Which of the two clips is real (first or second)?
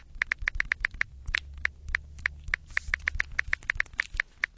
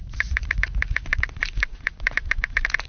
first